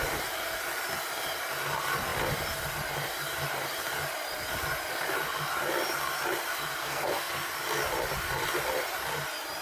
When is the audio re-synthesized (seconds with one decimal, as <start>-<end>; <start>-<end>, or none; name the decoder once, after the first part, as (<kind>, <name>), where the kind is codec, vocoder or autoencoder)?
6.8-7.3 (codec, SNAC)